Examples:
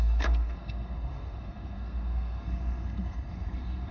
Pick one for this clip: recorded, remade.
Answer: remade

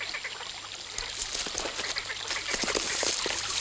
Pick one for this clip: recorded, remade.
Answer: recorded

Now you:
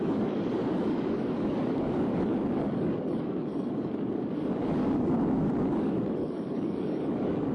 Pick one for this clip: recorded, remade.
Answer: remade